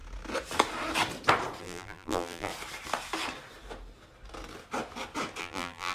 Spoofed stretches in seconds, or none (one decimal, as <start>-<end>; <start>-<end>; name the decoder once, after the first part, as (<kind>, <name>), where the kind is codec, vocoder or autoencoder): 1.6-2.5 (vocoder, BigVGAN v2); 5.4-5.9